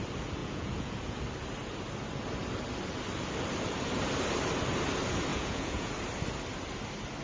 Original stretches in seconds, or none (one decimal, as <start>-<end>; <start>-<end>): 0.0-0.4; 1.2-5.3; 5.9-7.2